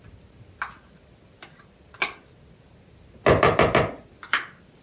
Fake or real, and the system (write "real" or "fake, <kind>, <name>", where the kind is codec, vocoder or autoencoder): real